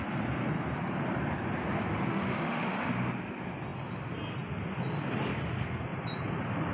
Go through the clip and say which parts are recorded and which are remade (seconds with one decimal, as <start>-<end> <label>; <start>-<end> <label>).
0.0-2.1 recorded; 2.1-2.9 remade; 2.9-6.7 recorded